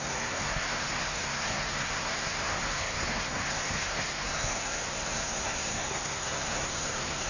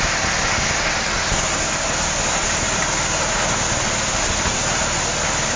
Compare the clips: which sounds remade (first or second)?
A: first